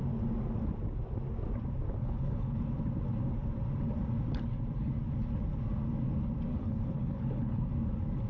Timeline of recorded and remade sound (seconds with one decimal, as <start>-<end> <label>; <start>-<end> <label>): 0.0-2.0 recorded; 2.0-2.6 remade; 2.6-6.5 recorded; 6.5-7.7 remade; 7.7-8.3 recorded